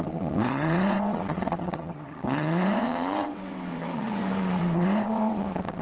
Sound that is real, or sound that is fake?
fake